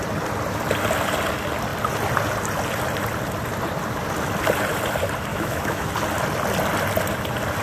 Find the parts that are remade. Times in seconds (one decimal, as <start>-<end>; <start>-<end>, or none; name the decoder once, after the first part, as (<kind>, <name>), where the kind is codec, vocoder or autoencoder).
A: 5.3-5.9 (autoencoder, DAC-VAE)